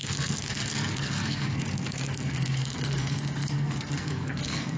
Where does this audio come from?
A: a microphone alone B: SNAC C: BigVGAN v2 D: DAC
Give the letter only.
B